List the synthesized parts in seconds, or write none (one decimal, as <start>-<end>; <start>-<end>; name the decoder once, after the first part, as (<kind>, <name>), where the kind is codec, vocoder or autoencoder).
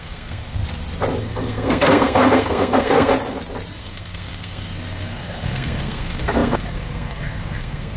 0.0-0.6 (codec, SNAC); 1.2-3.1; 3.8-8.0